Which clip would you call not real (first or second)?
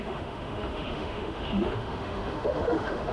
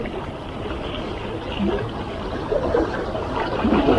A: first